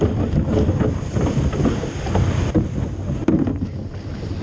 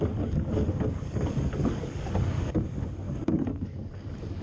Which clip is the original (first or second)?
first